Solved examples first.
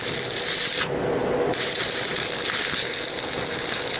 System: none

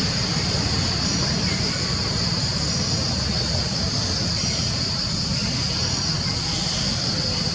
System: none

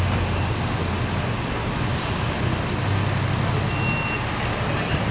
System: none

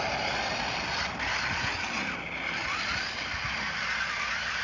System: none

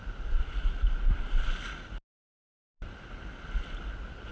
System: none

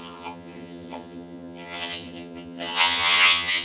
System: vocoder, HiFi-GAN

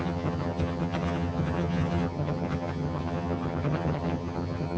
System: vocoder, HiFi-GAN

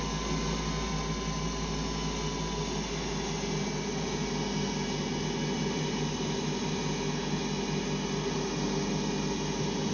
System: none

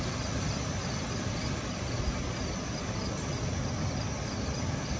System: none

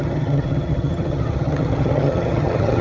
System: vocoder, HiFi-GAN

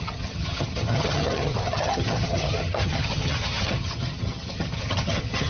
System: vocoder, HiFi-GAN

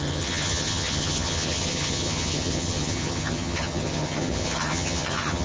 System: vocoder, HiFi-GAN